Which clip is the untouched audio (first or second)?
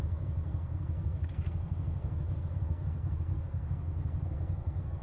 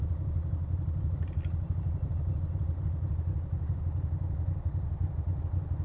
second